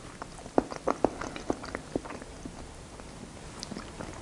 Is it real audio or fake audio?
real